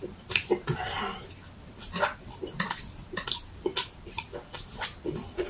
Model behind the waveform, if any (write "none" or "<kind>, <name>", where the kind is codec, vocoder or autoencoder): none